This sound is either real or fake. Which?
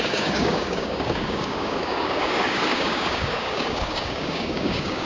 fake